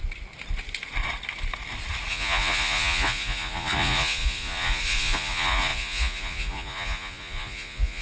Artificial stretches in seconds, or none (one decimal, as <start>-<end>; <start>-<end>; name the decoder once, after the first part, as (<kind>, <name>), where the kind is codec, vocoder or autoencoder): 2.1-8.0 (vocoder, Vocos)